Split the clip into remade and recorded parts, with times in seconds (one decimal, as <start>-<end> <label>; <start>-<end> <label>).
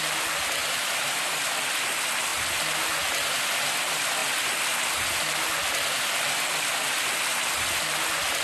0.0-0.6 recorded; 0.6-1.4 remade; 1.4-8.4 recorded